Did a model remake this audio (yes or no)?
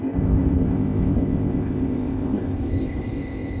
yes